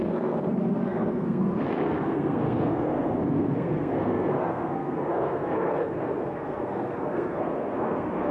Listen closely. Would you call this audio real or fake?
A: fake